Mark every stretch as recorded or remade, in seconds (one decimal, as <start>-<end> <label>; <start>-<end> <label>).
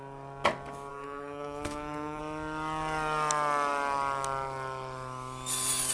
0.0-0.9 recorded; 0.9-2.2 remade; 2.2-5.9 recorded